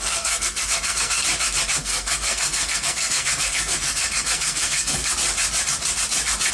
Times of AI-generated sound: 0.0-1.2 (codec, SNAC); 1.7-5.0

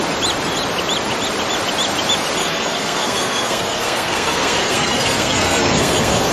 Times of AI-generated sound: 2.4-6.3 (codec, SNAC)

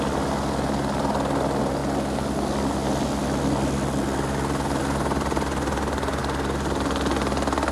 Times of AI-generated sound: none